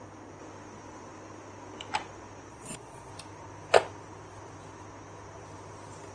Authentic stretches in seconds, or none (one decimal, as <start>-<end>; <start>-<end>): 0.0-2.5; 3.1-6.1